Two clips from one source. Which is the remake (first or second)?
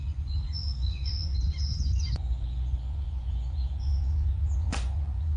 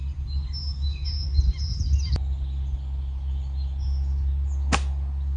first